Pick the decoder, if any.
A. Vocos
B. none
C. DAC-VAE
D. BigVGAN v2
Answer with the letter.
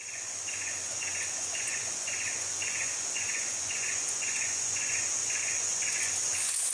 A